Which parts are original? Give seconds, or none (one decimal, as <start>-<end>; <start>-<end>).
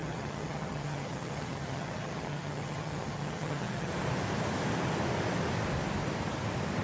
3.9-6.8